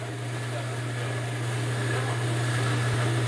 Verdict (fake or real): real